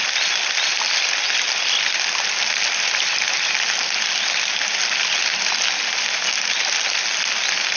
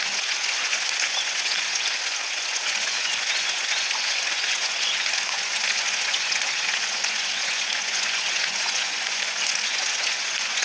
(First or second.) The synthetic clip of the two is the second